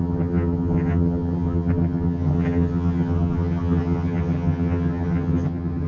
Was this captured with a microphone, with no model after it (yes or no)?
no